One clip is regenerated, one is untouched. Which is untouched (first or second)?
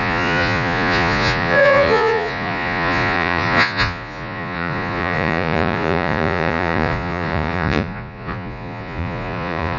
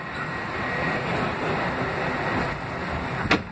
second